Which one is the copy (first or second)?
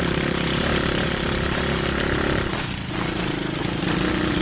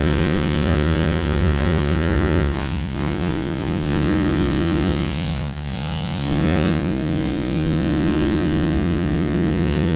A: second